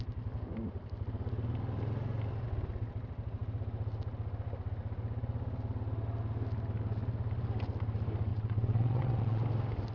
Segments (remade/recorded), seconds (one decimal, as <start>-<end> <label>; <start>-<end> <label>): 0.0-8.3 recorded; 8.3-9.4 remade; 9.4-9.9 recorded